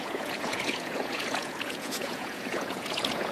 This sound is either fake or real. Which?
fake